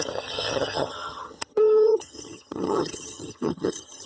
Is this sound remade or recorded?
remade